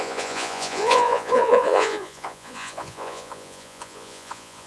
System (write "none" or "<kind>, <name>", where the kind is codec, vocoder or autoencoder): vocoder, Vocos